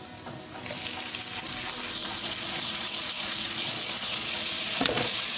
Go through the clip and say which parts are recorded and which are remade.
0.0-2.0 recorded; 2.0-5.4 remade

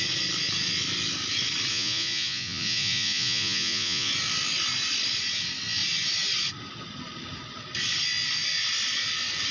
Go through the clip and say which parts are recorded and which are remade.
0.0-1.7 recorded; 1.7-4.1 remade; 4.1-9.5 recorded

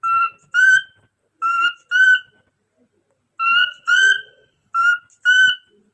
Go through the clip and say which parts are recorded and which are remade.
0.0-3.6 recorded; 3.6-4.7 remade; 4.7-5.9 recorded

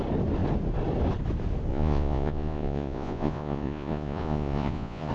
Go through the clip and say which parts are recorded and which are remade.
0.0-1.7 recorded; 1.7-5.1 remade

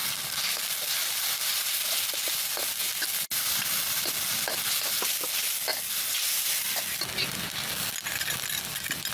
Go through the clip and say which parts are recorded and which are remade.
0.0-9.1 recorded